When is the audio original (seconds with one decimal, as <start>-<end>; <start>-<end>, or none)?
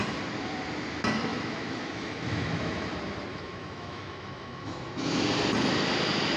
0.0-1.3; 2.9-3.3; 5.1-6.4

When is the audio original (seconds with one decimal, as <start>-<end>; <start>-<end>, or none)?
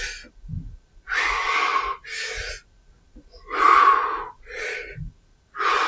0.0-5.9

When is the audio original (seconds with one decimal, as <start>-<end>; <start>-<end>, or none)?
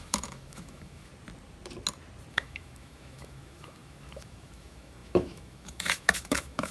1.1-2.3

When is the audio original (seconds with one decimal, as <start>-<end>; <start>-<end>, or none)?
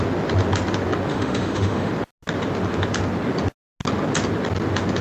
0.0-1.1; 1.9-5.0